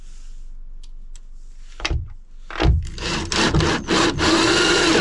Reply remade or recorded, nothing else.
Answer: recorded